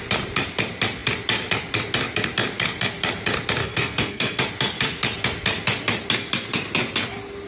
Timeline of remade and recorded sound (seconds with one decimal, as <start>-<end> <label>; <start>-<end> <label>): 0.0-3.6 recorded; 3.6-4.4 remade; 4.4-7.5 recorded